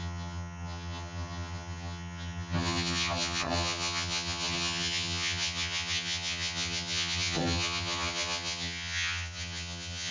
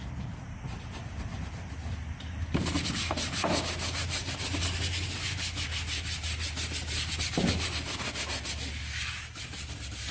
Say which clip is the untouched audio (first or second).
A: second